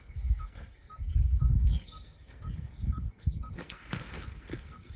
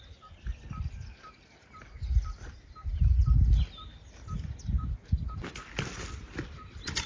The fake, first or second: first